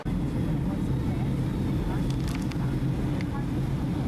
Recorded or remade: recorded